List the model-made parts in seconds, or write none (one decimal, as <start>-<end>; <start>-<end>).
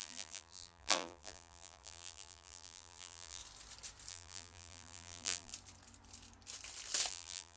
0.0-3.4; 4.1-5.5; 7.1-7.6